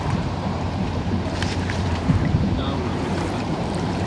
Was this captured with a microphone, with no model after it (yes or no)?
no